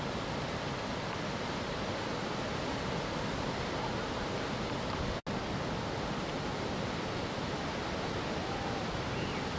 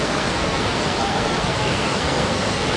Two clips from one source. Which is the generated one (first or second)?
second